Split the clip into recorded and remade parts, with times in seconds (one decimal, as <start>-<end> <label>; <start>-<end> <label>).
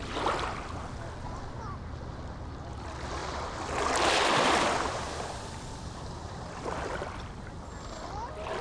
0.0-8.6 recorded